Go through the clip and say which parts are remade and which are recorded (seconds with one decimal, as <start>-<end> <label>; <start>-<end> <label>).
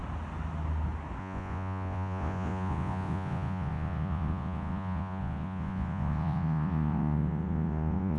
0.0-1.2 recorded; 1.2-8.2 remade